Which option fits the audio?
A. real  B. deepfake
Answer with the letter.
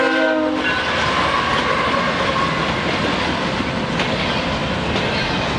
A